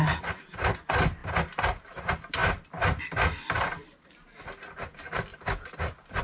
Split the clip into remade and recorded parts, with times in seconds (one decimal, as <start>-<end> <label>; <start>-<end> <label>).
0.0-5.3 recorded; 5.3-6.2 remade